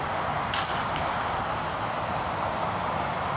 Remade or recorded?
recorded